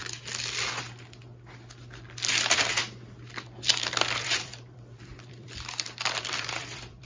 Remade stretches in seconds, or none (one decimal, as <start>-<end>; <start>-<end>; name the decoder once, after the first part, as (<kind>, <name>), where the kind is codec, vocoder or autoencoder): 4.2-7.0 (vocoder, BigVGAN v2)